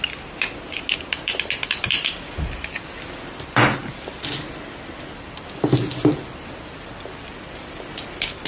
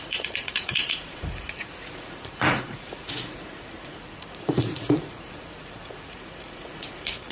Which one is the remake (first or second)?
second